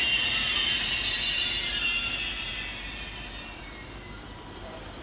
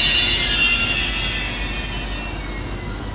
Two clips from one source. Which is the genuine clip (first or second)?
second